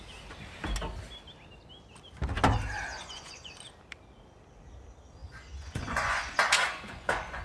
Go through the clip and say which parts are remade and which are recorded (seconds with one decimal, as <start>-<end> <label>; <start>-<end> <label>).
0.0-2.9 recorded; 2.9-3.5 remade; 3.5-5.2 recorded; 5.2-7.4 remade